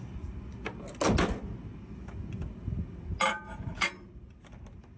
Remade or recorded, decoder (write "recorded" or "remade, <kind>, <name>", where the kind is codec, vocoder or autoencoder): recorded